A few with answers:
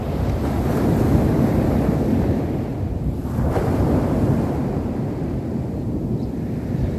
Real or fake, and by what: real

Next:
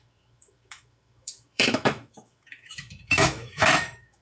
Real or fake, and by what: fake, autoencoder, DAC-VAE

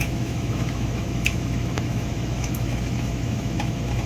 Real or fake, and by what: fake, autoencoder, DAC-VAE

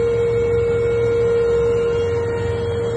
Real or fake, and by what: real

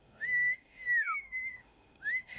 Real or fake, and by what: fake, autoencoder, DAC-VAE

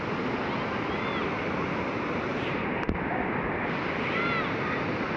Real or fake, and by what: real